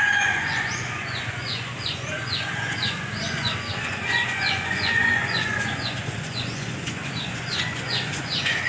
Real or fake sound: fake